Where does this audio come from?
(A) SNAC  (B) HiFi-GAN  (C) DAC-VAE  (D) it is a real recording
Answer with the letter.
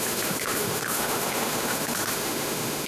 C